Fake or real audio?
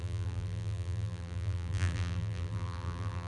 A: fake